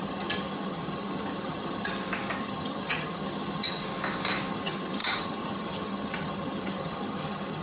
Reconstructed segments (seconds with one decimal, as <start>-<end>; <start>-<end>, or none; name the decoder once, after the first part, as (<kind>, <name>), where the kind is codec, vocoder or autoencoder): 0.0-1.9 (vocoder, HiFi-GAN); 2.4-3.8; 4.5-7.6